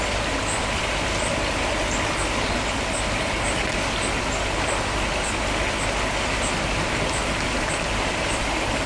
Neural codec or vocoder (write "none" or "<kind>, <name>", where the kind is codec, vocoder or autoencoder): none